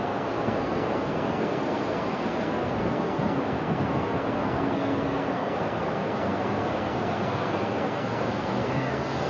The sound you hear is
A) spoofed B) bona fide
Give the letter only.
A